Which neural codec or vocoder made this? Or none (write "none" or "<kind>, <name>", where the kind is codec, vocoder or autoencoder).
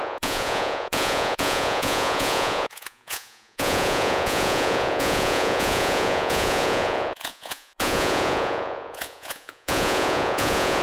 vocoder, Vocos